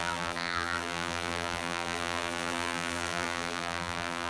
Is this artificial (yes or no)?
yes